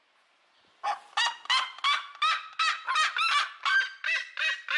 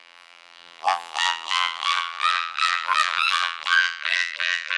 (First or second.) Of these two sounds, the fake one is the second